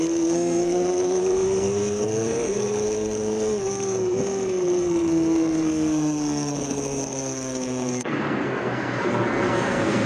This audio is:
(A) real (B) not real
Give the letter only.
B